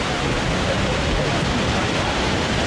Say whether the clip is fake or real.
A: real